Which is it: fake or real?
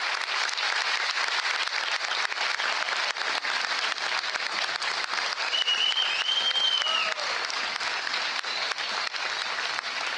real